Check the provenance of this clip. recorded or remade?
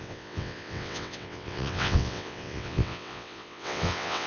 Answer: remade